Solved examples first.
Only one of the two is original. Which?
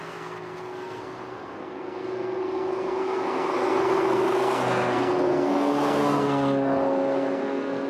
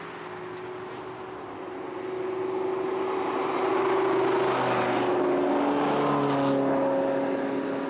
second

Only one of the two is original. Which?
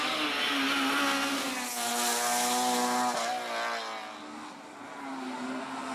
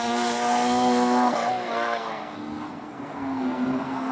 first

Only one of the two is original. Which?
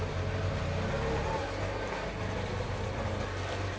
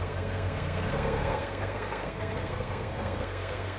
first